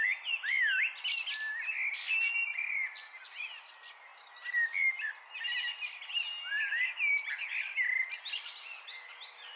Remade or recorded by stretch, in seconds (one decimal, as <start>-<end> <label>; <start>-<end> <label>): 0.0-9.6 recorded